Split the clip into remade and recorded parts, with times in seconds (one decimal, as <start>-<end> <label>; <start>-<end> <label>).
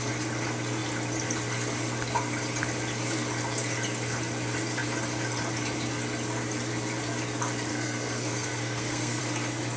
0.0-7.7 recorded; 7.7-9.2 remade; 9.2-9.8 recorded